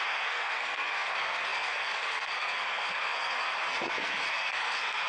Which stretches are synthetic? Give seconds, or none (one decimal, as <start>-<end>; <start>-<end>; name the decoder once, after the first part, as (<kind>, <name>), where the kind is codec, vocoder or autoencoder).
0.0-5.1 (codec, SNAC)